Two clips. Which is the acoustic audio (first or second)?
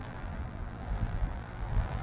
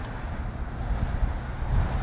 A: second